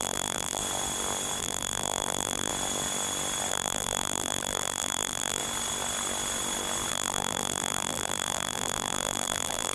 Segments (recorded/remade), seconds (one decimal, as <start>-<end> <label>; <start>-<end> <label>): 0.0-0.6 remade; 0.6-1.4 recorded; 1.4-2.5 remade; 2.5-3.5 recorded; 3.5-5.4 remade; 5.4-6.9 recorded; 6.9-9.7 remade